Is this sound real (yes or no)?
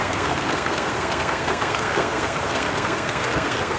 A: no